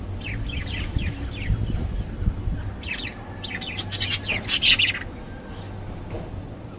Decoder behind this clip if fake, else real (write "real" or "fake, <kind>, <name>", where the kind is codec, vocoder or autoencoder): real